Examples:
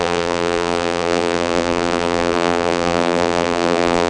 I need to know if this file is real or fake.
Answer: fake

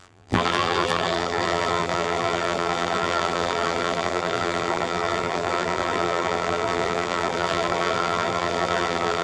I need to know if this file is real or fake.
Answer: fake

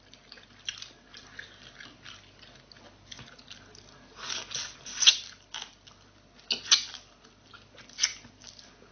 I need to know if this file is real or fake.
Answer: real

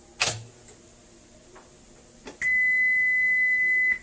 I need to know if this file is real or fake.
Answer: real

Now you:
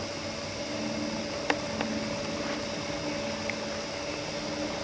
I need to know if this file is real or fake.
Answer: real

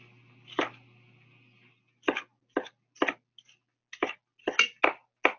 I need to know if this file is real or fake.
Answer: real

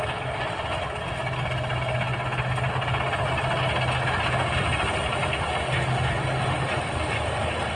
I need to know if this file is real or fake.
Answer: real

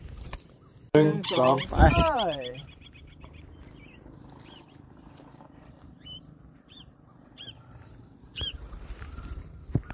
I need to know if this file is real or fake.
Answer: fake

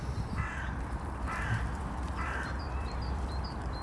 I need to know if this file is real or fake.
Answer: fake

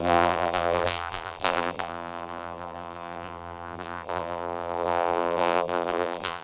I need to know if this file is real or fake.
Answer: fake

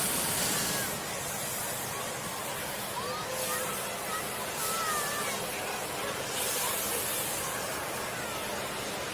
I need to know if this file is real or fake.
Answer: real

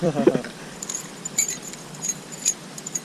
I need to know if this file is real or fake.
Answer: fake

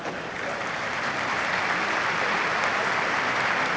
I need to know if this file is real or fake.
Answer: real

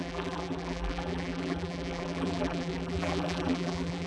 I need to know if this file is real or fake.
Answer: fake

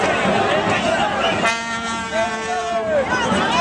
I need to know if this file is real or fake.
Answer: real